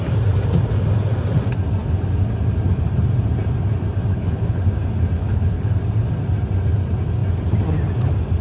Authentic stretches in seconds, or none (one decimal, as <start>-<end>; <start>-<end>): 0.0-4.1; 4.6-5.2; 5.8-8.4